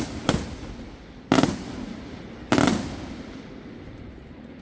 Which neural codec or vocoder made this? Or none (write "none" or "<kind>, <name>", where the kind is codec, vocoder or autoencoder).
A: none